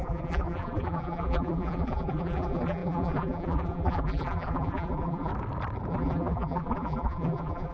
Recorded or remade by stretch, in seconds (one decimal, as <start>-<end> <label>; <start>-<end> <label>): 0.0-5.3 remade; 5.3-5.9 recorded; 5.9-7.7 remade